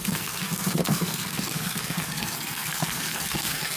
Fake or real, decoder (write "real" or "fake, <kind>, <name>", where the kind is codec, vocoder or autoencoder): fake, codec, SNAC